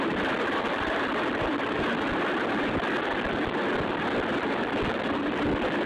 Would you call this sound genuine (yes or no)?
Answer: no